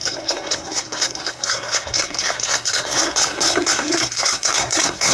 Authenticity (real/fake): fake